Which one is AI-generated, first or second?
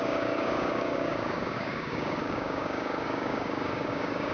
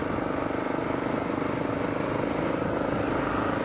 first